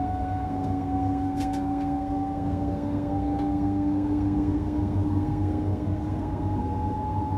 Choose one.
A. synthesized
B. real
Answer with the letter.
A